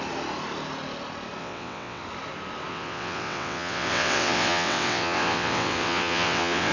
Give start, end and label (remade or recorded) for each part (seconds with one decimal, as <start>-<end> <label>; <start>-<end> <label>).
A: 0.0-1.4 recorded; 1.4-2.0 remade; 2.0-2.7 recorded; 2.7-6.7 remade